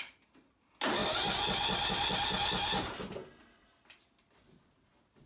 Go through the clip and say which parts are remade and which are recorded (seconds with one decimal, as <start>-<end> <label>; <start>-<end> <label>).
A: 0.0-5.3 recorded

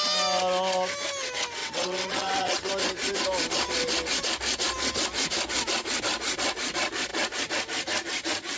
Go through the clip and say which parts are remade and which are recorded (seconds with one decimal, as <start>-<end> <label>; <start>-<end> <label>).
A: 0.0-1.6 recorded; 1.6-2.7 remade; 2.7-8.6 recorded

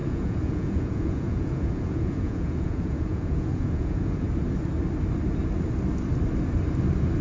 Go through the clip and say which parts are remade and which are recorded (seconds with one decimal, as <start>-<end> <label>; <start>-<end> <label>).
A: 0.0-4.3 remade; 4.3-7.2 recorded